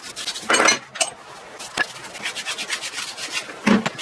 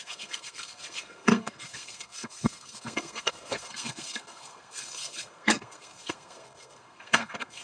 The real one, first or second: first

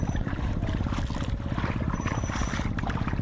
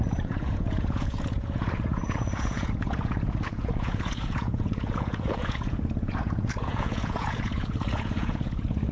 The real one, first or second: first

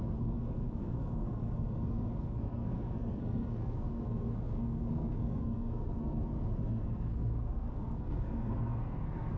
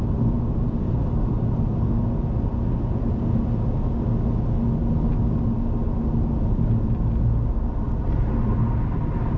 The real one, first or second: second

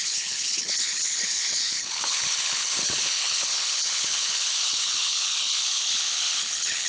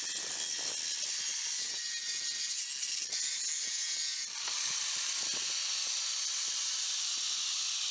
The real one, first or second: second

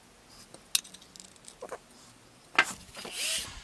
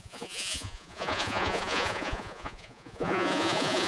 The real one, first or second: first